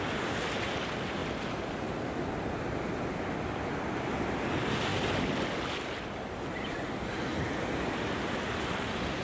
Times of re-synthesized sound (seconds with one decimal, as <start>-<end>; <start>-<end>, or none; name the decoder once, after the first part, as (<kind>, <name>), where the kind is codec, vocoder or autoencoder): none